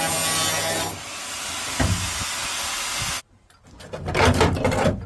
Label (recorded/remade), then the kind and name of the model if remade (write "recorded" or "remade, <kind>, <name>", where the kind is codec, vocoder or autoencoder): recorded